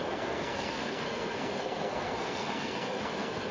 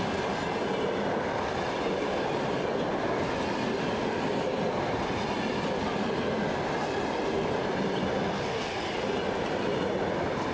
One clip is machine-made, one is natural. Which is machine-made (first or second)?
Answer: first